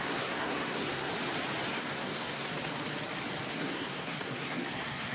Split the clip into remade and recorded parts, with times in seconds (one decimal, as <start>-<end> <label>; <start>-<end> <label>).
0.0-1.1 remade; 1.1-1.7 recorded; 1.7-2.5 remade; 2.5-3.5 recorded; 3.5-5.1 remade